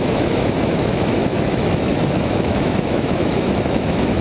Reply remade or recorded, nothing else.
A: remade